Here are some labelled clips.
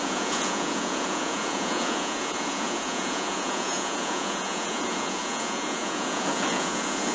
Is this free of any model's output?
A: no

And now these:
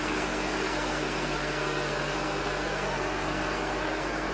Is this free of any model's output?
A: no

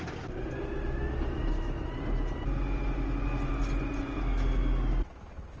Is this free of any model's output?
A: yes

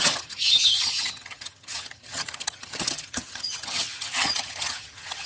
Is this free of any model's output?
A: no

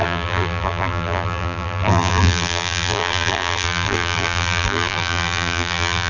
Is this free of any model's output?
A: no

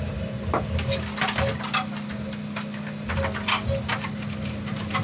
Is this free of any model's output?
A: yes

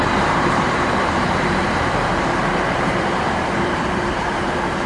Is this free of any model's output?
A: no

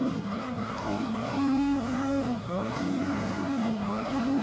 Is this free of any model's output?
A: no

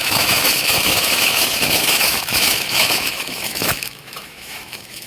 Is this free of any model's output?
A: no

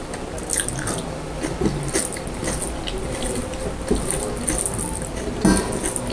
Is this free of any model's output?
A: yes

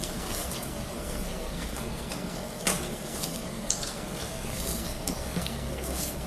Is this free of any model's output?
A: no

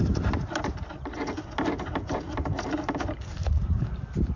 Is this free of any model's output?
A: yes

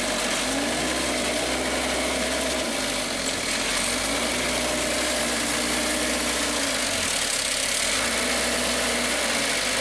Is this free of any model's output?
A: yes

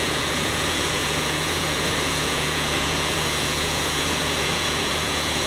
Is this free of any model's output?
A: no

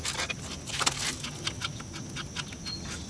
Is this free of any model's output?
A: yes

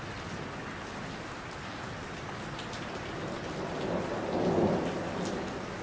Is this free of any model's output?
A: yes